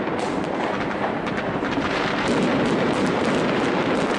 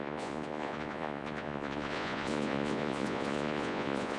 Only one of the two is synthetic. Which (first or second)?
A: second